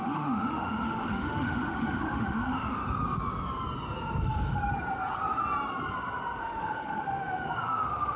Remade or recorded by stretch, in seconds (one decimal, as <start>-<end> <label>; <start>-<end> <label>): 0.0-2.8 remade; 2.8-4.2 recorded; 4.2-4.7 remade; 4.7-6.4 recorded; 6.4-8.2 remade